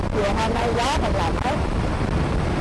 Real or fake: fake